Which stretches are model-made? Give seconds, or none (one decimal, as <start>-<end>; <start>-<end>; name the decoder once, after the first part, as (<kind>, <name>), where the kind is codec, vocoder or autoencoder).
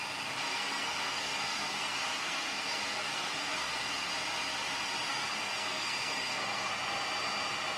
0.5-4.1 (codec, SNAC); 5.1-6.7